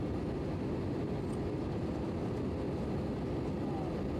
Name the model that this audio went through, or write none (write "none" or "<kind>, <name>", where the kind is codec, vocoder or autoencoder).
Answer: none